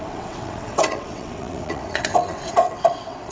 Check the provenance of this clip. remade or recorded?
remade